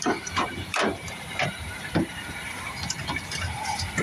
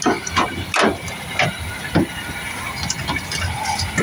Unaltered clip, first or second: second